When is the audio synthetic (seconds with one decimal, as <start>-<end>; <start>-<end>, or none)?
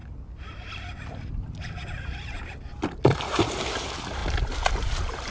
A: 3.2-4.2; 4.7-5.3